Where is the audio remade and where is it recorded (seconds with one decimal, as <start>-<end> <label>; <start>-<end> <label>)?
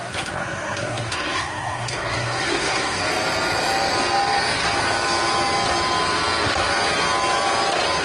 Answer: 0.0-3.0 remade; 3.0-8.0 recorded